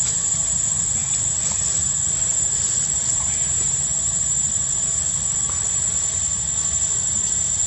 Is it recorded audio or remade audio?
recorded